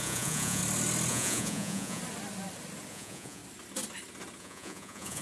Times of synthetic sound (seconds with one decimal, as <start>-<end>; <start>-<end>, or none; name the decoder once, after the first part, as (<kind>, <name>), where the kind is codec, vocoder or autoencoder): 0.0-0.6 (vocoder, Vocos); 1.1-2.0; 2.9-3.4; 4.4-5.2